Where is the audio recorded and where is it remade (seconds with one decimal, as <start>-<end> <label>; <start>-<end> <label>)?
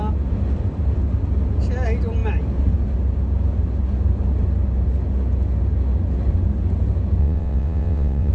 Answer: 0.0-7.2 recorded; 7.2-8.3 remade